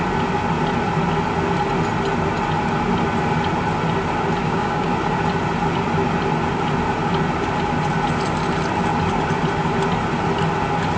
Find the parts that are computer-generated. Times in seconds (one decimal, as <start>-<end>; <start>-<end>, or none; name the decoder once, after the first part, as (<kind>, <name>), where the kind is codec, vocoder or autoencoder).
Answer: 4.4-4.9 (codec, DAC)